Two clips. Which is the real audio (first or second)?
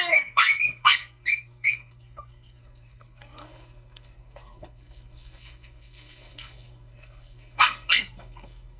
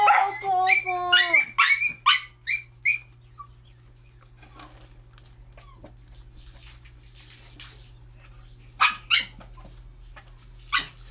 second